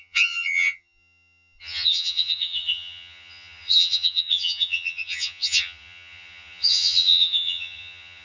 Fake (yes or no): yes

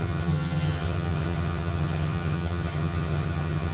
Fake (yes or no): yes